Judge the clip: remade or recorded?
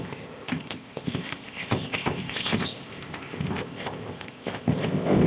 remade